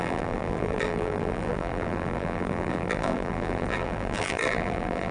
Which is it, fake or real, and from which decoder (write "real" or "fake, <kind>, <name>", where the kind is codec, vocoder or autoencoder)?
fake, vocoder, BigVGAN v2